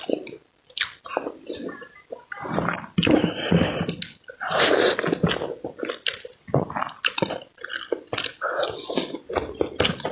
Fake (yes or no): no